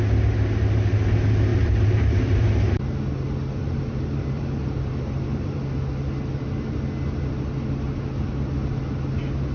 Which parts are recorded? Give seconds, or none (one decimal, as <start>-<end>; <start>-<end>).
0.0-1.5; 3.0-3.6; 5.6-9.5